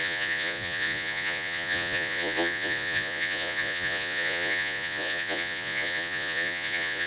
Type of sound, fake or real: fake